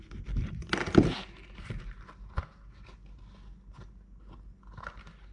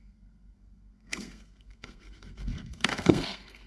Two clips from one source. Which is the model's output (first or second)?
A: second